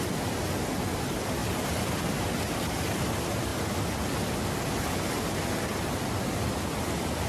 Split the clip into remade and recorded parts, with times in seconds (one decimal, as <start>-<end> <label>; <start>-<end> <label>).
0.0-7.3 recorded